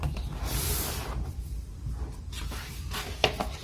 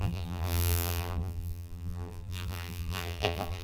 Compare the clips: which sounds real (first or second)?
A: first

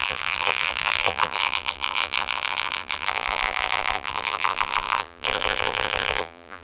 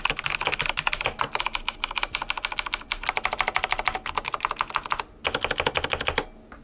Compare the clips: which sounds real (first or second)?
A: second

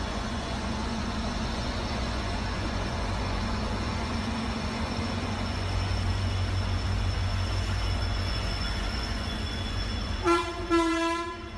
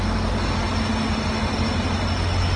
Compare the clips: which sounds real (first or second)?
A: second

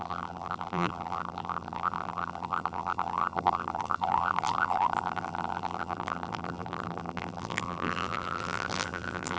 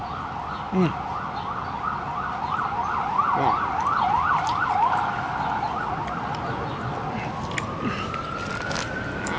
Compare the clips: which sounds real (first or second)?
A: second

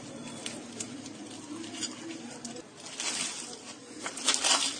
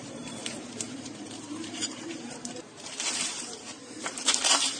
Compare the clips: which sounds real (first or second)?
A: first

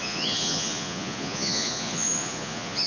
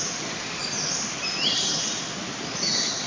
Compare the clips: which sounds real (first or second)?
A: second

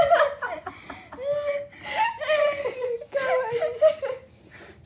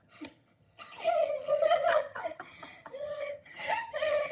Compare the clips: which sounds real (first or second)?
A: first